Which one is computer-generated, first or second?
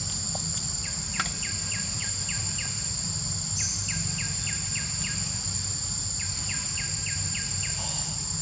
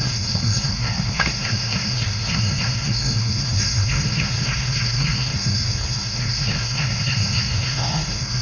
second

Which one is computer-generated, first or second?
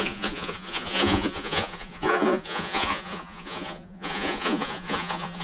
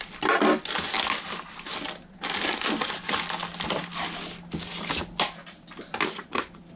first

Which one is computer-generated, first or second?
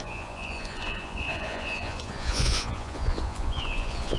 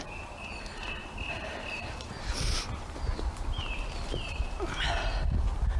first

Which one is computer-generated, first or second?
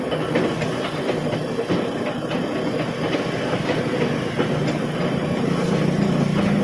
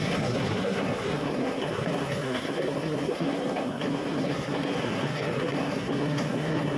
second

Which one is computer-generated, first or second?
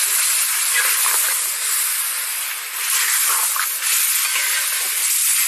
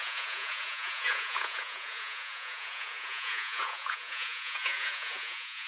second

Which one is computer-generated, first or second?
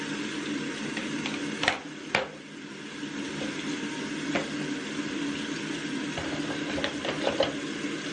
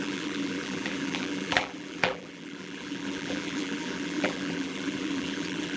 second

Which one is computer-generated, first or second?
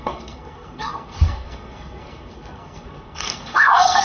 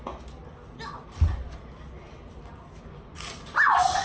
first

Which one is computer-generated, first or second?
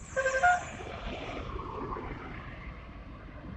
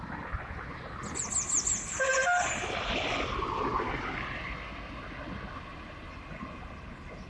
first